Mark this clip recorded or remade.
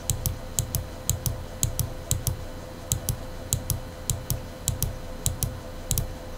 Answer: recorded